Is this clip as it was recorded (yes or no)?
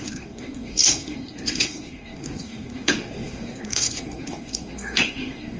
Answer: no